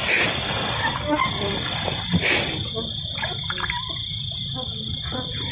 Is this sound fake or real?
real